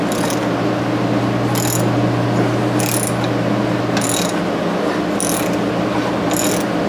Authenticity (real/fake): real